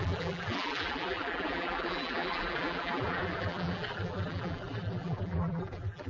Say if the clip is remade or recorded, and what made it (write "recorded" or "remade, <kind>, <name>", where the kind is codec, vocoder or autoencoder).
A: remade, vocoder, BigVGAN v2